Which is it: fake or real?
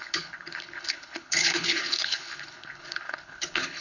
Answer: fake